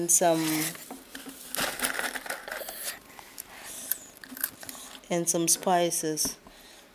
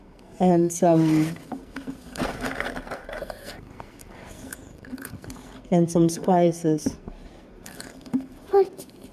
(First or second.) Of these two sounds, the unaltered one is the first